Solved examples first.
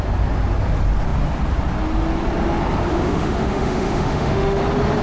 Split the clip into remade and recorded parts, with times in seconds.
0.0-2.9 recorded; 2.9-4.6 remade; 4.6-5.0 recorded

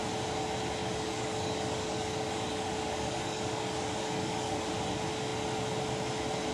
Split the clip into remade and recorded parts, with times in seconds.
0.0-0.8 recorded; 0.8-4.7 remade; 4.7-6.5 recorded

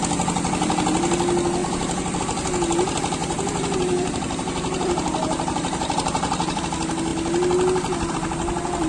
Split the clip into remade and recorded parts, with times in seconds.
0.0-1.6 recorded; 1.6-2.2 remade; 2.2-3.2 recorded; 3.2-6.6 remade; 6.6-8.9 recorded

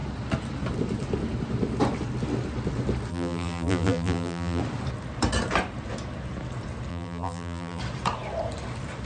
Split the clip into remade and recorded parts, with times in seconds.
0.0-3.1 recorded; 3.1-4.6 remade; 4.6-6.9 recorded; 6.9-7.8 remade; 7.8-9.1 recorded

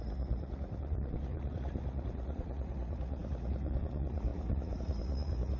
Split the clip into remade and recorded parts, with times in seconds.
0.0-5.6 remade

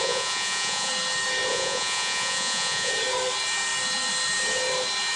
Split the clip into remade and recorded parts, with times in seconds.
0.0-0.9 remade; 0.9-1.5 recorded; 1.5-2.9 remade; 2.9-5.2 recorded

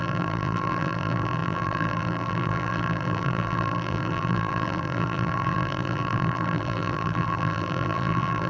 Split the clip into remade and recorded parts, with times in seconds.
0.0-8.5 remade